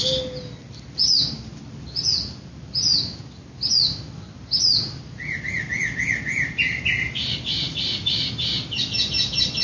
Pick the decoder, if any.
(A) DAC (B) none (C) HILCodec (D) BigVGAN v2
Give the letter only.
B